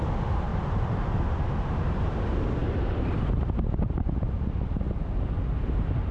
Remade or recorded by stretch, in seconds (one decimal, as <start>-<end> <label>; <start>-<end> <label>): 0.0-0.5 recorded; 0.5-2.2 remade; 2.2-6.1 recorded